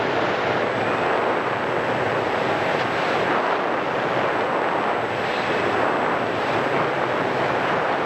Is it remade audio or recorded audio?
recorded